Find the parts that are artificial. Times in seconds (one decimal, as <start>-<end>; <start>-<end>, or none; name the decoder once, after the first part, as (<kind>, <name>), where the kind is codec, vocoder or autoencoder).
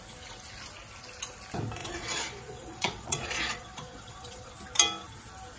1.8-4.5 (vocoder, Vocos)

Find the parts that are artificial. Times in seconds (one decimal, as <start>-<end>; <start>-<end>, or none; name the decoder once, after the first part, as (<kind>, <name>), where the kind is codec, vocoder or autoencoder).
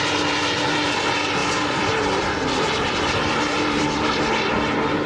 1.4-4.5 (vocoder, BigVGAN v2)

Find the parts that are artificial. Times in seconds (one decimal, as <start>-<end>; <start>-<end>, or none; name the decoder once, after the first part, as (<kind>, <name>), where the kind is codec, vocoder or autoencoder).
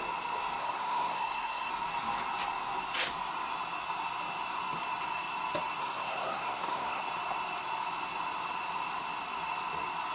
0.6-1.7 (codec, SNAC); 5.8-7.0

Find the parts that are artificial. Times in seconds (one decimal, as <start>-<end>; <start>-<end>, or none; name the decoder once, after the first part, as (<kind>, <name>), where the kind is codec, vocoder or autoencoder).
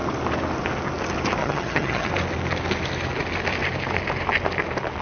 1.4-2.1 (vocoder, HiFi-GAN)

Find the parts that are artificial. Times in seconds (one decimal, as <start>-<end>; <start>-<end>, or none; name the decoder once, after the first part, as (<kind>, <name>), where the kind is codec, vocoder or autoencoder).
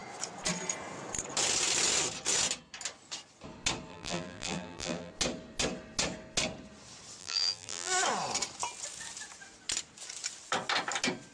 3.9-5.1 (vocoder, BigVGAN v2); 7.2-7.9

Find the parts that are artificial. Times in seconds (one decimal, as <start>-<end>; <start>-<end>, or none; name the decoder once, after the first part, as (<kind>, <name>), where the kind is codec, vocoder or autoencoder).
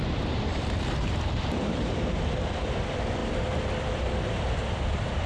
0.0-5.3 (vocoder, BigVGAN v2)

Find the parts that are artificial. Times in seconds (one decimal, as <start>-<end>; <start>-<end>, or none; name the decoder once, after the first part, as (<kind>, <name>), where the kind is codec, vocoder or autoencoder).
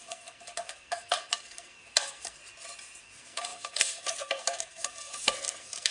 0.0-2.4 (codec, SNAC); 3.0-5.9